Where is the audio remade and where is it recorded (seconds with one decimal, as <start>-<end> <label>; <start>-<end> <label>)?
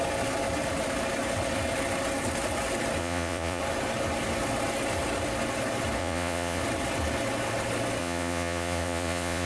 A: 0.0-3.0 recorded; 3.0-3.6 remade; 3.6-6.0 recorded; 6.0-6.6 remade; 6.6-8.0 recorded; 8.0-9.5 remade